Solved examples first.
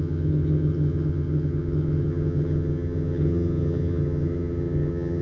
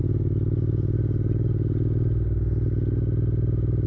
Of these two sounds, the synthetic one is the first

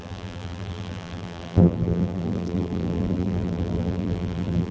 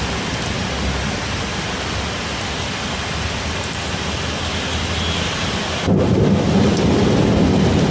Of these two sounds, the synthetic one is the first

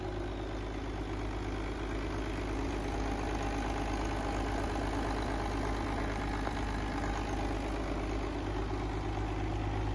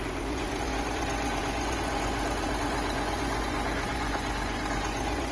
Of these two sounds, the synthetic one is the second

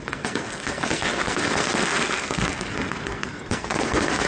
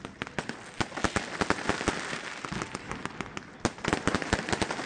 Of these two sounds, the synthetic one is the first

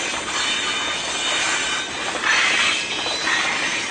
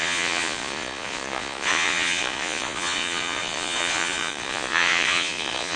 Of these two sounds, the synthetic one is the second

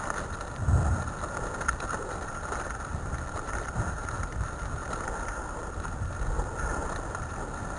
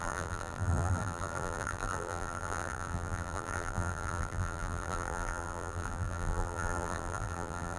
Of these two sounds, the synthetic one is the second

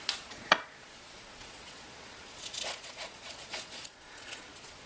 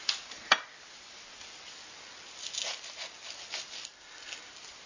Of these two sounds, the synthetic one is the first